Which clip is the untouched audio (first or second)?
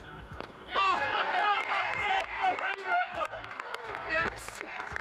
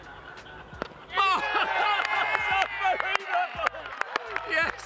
second